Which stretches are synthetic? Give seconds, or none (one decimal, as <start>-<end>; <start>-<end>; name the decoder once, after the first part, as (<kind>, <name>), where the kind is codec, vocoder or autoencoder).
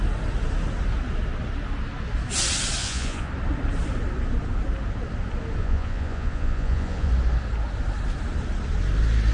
2.8-3.3 (vocoder, Vocos); 5.6-7.1